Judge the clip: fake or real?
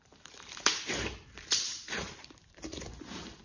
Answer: fake